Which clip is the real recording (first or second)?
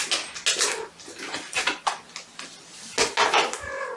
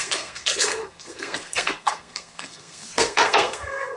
first